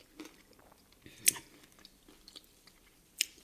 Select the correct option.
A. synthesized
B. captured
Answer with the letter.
A